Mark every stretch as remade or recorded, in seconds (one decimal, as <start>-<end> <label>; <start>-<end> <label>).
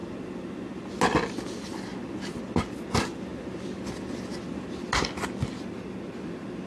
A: 0.0-6.7 recorded